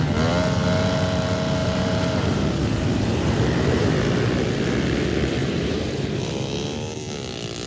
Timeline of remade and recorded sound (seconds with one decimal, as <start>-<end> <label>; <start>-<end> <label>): 0.0-1.6 recorded; 1.6-3.9 remade; 3.9-5.4 recorded; 5.4-6.2 remade; 6.2-7.7 recorded